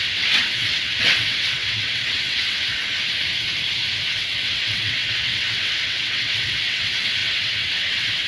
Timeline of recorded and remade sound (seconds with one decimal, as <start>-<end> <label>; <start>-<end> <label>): 0.0-2.8 remade; 2.8-4.1 recorded; 4.1-8.3 remade